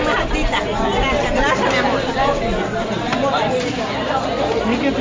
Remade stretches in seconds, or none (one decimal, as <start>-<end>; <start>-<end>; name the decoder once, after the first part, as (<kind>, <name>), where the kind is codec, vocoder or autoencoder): none